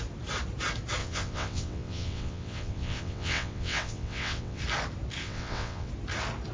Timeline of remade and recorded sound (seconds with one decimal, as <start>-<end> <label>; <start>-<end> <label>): 0.0-1.0 recorded; 1.0-4.6 remade; 4.6-5.2 recorded; 5.2-5.9 remade; 5.9-6.5 recorded